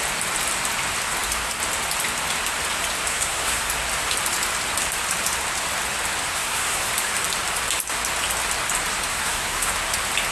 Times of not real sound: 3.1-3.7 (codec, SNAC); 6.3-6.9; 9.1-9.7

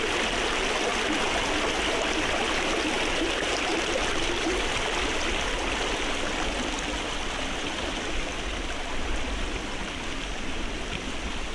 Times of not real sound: none

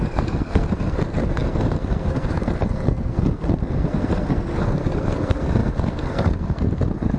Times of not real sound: 0.0-7.2 (codec, SNAC)

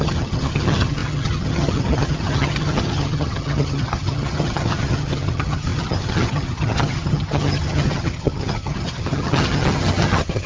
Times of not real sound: 0.0-10.5 (vocoder, HiFi-GAN)

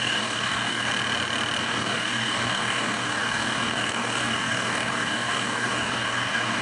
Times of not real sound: 0.0-0.9 (codec, DAC); 1.6-6.6

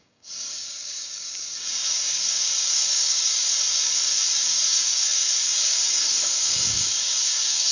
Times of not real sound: 0.0-7.7 (codec, DAC)

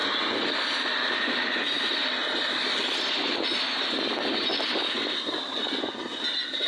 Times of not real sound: none

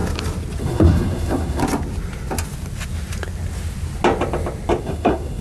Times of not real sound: 0.6-1.6 (codec, SNAC); 4.8-5.4